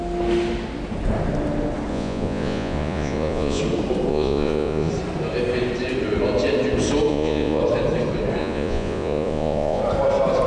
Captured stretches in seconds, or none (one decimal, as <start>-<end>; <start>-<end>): 0.0-1.9; 3.6-4.1; 4.9-7.1; 7.6-8.4; 9.8-10.5